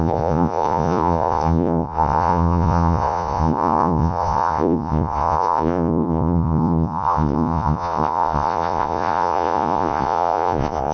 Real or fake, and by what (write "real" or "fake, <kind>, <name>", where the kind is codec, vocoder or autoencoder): fake, vocoder, Vocos